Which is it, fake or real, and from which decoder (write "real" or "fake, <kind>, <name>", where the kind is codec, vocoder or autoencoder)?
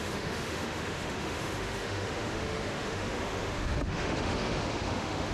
fake, autoencoder, DAC-VAE